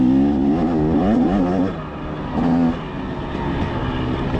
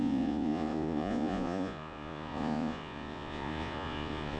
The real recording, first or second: first